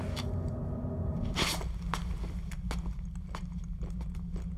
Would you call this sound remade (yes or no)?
no